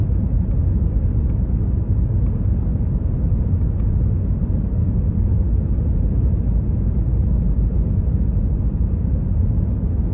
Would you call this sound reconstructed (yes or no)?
no